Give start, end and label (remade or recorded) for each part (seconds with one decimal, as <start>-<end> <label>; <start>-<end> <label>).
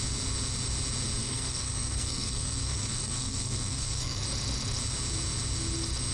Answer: 0.0-1.2 recorded; 1.2-4.2 remade; 4.2-6.1 recorded